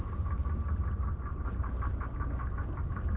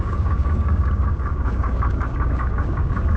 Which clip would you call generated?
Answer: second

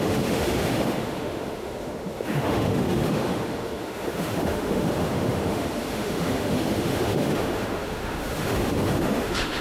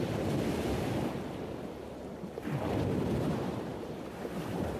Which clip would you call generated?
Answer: first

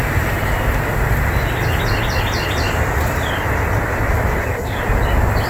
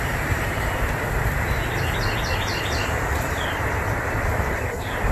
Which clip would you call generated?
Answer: second